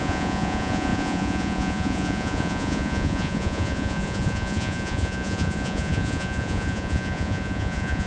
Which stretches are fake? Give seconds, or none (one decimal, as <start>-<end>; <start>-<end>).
0.0-8.1